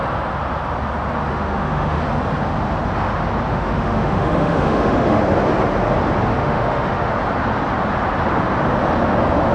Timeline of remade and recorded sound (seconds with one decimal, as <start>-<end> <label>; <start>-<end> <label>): 0.0-1.3 recorded; 1.3-2.0 remade; 2.0-3.5 recorded; 3.5-5.2 remade; 5.2-6.4 recorded; 6.4-7.1 remade; 7.1-9.5 recorded